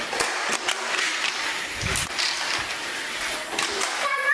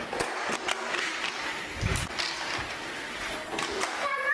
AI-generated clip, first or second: first